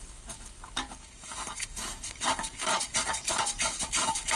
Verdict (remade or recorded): remade